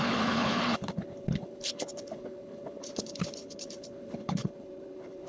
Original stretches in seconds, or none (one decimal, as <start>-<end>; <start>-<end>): none